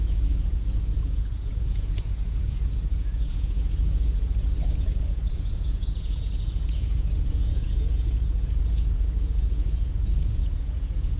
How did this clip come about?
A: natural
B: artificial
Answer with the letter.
B